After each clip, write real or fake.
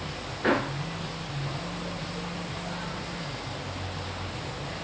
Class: real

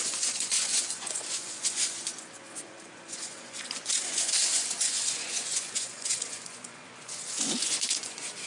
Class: fake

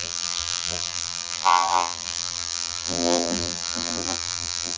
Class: fake